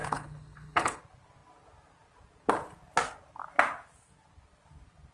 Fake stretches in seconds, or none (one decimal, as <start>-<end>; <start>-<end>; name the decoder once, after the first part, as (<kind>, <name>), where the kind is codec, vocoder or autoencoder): 0.0-1.0 (codec, HILCodec)